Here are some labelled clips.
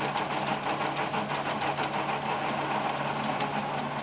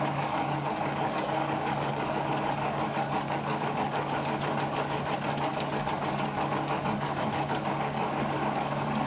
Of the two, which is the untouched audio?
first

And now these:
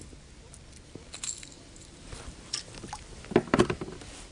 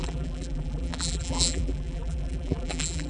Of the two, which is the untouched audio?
first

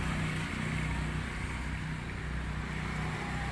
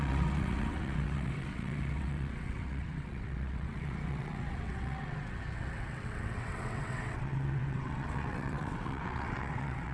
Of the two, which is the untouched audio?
first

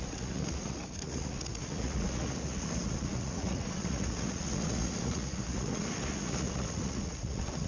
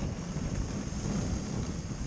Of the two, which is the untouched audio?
second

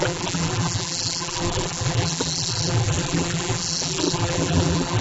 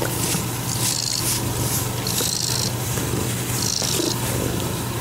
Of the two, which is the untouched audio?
second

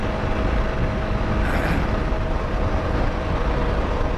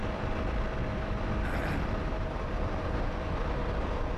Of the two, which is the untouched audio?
first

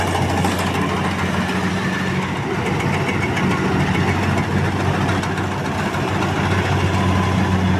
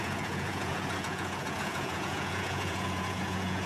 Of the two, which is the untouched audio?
first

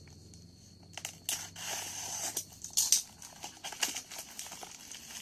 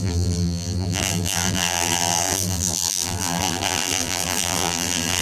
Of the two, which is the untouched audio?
first